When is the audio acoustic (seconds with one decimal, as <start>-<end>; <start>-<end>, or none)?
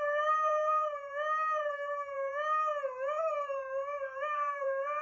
1.0-1.6; 2.3-3.2